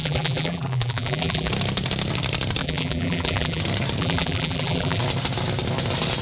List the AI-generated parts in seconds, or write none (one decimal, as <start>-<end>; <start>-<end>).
0.0-1.5; 2.6-3.6; 4.0-5.0